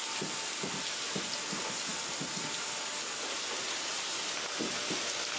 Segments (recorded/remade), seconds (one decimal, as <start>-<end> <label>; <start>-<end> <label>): 0.0-5.4 recorded